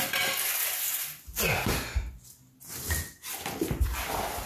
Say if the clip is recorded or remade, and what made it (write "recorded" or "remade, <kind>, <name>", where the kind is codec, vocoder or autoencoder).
recorded